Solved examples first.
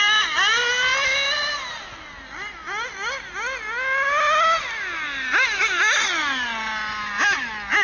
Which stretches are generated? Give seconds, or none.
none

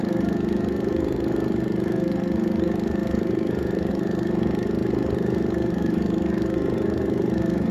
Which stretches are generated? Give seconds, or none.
0.0-7.7 (codec, SNAC)

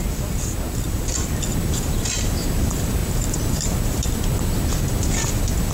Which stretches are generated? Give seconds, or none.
1.5-2.5 (vocoder, BigVGAN v2); 3.0-4.7

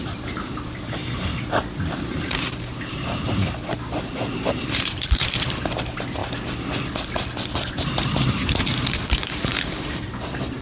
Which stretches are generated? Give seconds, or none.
0.0-1.3 (vocoder, BigVGAN v2); 2.0-6.2; 8.3-10.6